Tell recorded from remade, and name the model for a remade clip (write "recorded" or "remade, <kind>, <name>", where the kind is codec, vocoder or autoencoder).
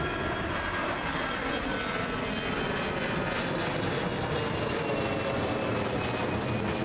recorded